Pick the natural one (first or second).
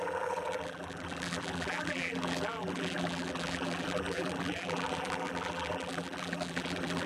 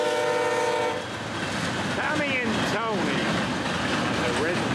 second